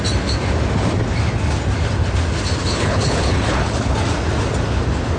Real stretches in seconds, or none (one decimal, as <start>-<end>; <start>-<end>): 0.0-2.6; 4.0-5.2